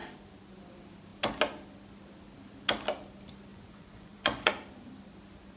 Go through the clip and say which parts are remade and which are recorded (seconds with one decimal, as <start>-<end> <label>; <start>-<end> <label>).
0.0-3.5 recorded; 3.5-4.5 remade; 4.5-5.6 recorded